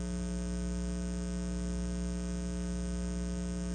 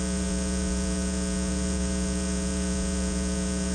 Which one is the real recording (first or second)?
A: first